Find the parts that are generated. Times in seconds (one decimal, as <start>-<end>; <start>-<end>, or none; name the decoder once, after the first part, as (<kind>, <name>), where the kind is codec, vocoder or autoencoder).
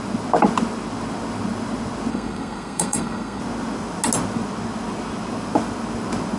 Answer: 2.1-3.4 (codec, SNAC)